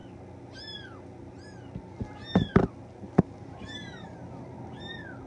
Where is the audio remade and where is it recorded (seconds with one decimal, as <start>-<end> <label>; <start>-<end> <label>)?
0.0-3.2 recorded; 3.2-4.2 remade; 4.2-5.3 recorded